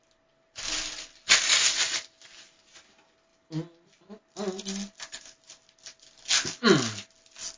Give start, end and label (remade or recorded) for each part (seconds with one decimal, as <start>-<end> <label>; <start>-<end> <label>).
0.0-7.6 recorded